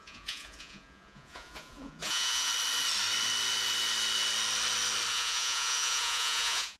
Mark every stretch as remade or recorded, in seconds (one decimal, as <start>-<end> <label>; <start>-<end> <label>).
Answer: 0.0-2.5 remade; 2.5-5.1 recorded; 5.1-6.8 remade